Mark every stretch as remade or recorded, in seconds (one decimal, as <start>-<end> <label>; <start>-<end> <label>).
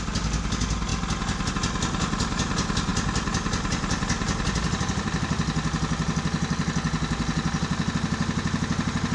0.0-9.1 recorded